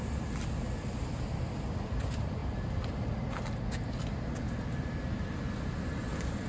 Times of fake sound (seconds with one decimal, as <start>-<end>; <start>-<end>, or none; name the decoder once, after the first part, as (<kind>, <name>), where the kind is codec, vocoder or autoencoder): none